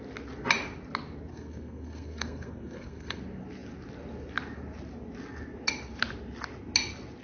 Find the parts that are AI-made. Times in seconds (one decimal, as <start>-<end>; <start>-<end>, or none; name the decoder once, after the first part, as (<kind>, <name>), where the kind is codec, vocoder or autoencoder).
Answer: 1.3-3.2 (codec, SNAC)